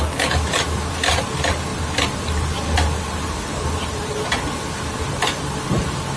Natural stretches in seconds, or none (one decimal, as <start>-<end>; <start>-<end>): 0.0-6.2

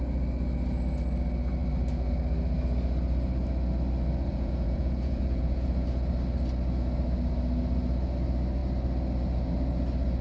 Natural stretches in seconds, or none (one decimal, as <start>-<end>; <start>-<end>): 0.0-4.3; 5.7-10.2